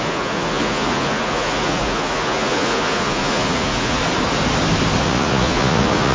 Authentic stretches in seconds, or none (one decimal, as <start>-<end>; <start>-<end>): 4.0-5.0